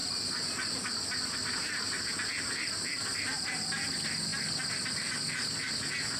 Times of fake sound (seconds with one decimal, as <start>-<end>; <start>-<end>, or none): none